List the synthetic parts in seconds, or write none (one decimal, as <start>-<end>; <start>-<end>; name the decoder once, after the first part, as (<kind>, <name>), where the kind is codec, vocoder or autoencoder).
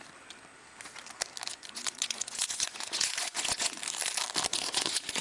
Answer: 1.5-3.8 (vocoder, Vocos); 4.5-5.2